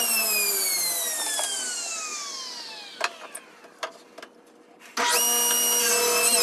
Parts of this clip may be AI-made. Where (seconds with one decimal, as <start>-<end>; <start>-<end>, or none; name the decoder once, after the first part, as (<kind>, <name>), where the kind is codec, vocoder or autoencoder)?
none